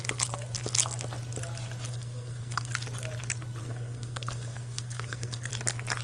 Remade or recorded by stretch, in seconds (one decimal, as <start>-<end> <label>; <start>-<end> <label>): 0.0-1.9 recorded; 1.9-2.7 remade; 2.7-3.6 recorded; 3.6-5.5 remade; 5.5-6.0 recorded